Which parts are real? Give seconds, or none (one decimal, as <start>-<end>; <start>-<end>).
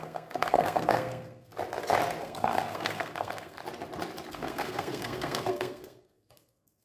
1.5-2.2; 3.6-4.3